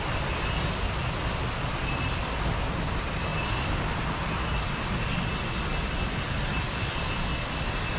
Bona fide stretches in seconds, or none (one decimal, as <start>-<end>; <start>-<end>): 0.0-8.0